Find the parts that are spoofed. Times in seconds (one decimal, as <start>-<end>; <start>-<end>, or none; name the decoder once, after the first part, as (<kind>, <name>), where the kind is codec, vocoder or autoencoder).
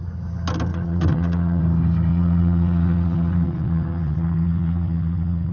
0.7-1.6 (vocoder, WaveNeXt); 2.1-5.5